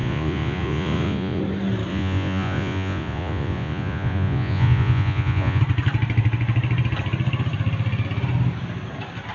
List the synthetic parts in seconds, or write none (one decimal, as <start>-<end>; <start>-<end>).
0.0-1.4; 1.9-5.6